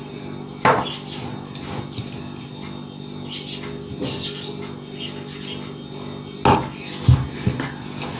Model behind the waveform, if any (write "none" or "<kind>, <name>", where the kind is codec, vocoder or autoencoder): none